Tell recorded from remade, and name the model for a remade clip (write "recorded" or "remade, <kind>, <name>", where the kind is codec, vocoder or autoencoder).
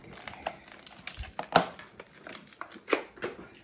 recorded